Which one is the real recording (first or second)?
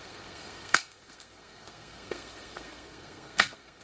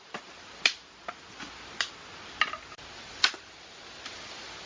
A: second